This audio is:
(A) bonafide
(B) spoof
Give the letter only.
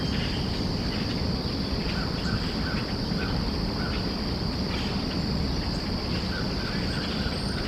A